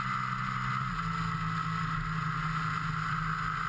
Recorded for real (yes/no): yes